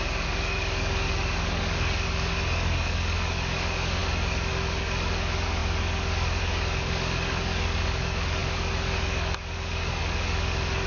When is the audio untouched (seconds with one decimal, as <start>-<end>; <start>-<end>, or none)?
none